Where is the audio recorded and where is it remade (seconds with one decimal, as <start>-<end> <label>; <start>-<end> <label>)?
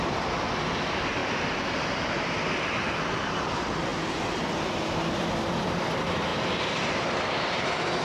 0.0-3.9 remade; 3.9-4.6 recorded; 4.6-8.0 remade